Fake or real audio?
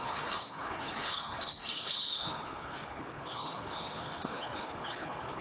fake